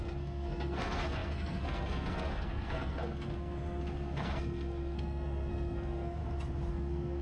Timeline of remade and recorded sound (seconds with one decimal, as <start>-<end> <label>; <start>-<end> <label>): 0.0-6.2 remade; 6.2-6.7 recorded; 6.7-7.2 remade